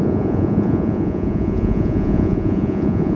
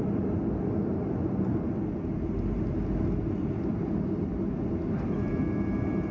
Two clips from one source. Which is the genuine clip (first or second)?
second